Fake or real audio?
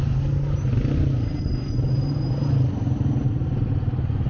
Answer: real